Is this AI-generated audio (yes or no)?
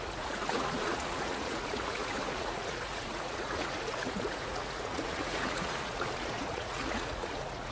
yes